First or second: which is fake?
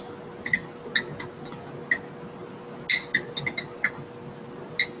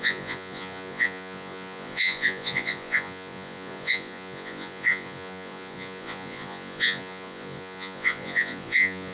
second